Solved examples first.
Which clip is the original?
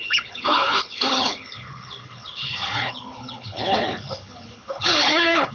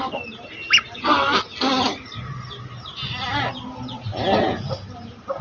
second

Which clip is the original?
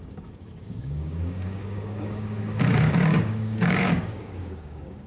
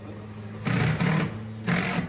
second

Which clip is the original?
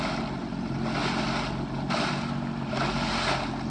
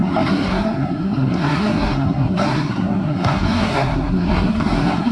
first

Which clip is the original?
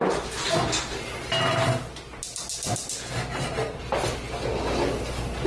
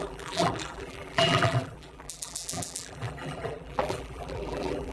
first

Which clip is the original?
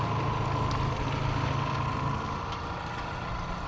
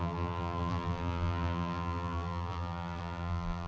first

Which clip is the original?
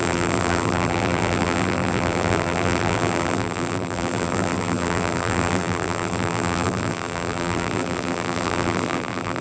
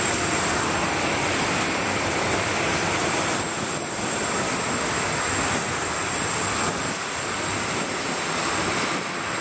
second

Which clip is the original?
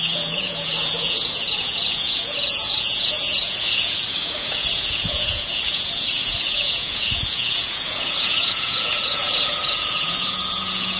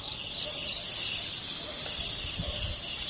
second